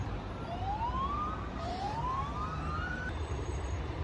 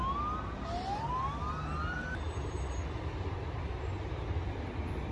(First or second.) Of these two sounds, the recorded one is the second